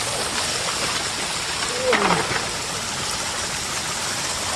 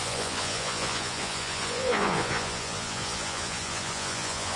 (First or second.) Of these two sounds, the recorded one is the first